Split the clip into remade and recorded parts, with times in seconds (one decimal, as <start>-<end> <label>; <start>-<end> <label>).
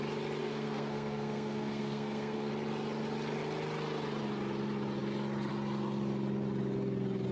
0.0-0.4 recorded; 0.4-2.5 remade; 2.5-7.3 recorded